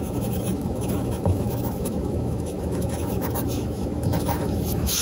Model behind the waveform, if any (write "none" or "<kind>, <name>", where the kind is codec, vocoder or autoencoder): autoencoder, DAC-VAE